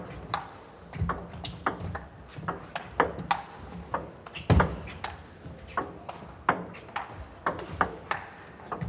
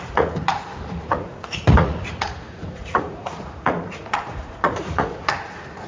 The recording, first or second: first